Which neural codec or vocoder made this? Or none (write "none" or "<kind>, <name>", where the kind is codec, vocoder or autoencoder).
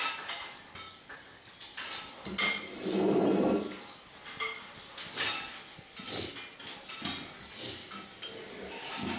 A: none